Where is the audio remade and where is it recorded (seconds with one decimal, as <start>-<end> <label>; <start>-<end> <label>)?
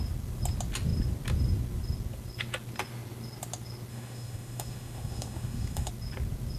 0.0-3.9 recorded; 3.9-5.9 remade; 5.9-6.6 recorded